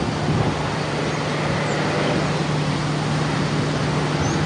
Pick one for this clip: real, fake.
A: real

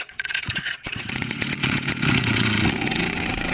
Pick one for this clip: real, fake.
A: fake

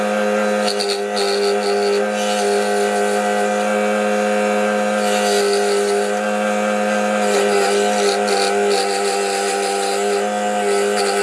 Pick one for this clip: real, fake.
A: real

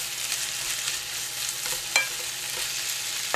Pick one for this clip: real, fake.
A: real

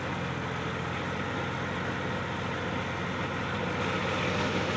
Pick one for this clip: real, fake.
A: real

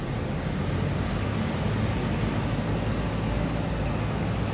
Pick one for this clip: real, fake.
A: real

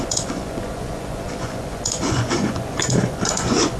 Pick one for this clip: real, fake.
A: fake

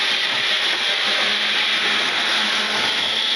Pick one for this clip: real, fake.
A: real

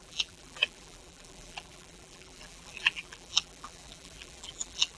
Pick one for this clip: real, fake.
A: fake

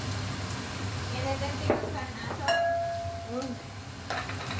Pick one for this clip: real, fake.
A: real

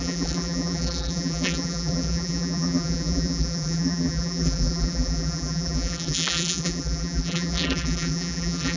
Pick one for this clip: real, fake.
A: fake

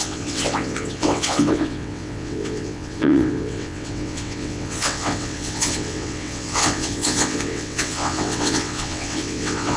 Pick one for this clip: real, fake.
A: fake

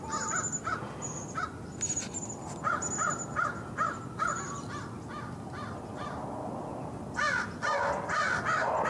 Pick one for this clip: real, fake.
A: real